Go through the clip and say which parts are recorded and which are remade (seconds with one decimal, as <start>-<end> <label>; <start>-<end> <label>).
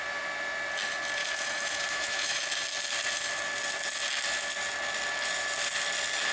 0.0-1.2 recorded; 1.2-2.4 remade; 2.4-6.3 recorded